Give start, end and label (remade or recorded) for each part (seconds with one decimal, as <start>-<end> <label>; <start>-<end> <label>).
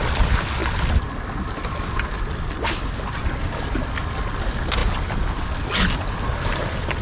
0.0-7.0 recorded